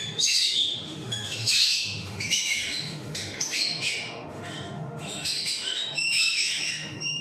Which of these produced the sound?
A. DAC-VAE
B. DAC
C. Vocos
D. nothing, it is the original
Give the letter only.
A